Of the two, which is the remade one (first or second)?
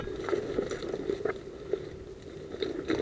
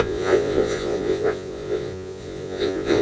second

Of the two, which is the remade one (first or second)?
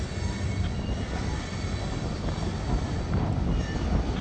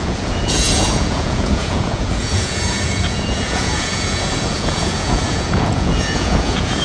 second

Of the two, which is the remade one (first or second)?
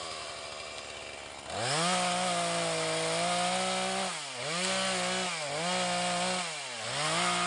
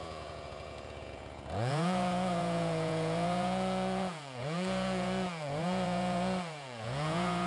second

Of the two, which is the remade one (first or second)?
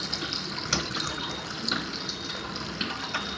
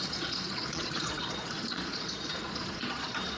second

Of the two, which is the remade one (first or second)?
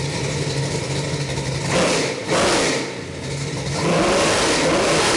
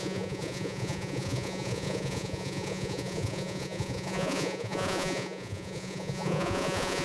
second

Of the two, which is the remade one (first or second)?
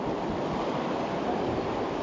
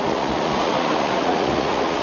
second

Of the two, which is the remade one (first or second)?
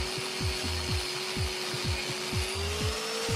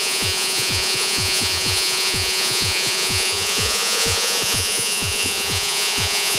second